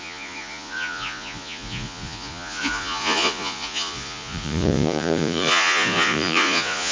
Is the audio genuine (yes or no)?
no